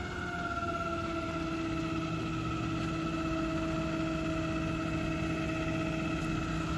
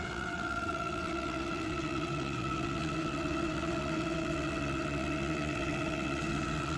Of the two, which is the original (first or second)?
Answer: first